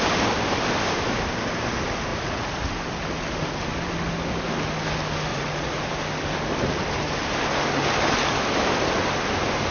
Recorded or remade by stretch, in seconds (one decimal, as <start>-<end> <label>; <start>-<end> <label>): 0.0-2.1 recorded; 2.1-2.7 remade; 2.7-5.3 recorded; 5.3-5.8 remade; 5.8-9.7 recorded